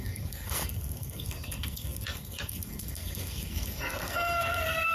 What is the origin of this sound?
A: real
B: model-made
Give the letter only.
B